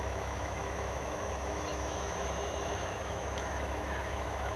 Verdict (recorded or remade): remade